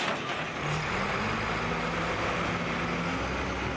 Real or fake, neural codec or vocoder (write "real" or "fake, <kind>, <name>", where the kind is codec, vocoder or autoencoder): real